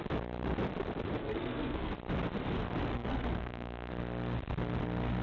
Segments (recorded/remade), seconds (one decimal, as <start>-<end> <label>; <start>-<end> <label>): 0.0-1.2 recorded; 1.2-1.9 remade; 1.9-2.9 recorded; 2.9-3.9 remade; 3.9-5.2 recorded